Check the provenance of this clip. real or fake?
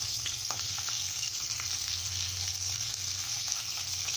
fake